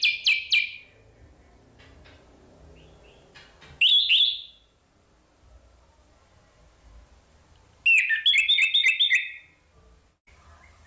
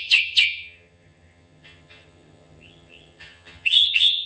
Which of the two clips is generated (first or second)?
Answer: second